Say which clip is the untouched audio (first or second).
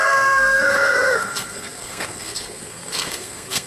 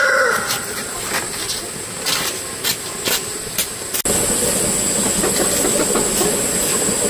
second